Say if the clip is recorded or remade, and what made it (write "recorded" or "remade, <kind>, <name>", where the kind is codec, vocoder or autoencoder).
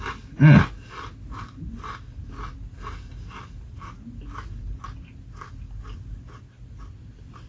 recorded